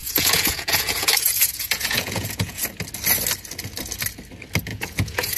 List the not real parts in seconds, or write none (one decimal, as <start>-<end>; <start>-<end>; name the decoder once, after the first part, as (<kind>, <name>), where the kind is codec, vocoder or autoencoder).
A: 0.0-2.7 (vocoder, Vocos); 4.7-5.4